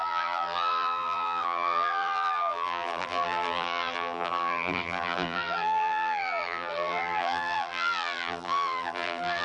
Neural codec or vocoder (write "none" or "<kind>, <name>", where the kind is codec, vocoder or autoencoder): vocoder, BigVGAN v2